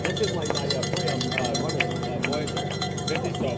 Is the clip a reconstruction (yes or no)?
yes